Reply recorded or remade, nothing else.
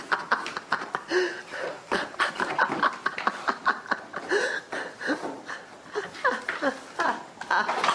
recorded